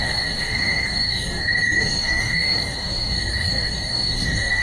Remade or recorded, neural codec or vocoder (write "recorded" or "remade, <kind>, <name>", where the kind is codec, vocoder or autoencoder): remade, codec, DAC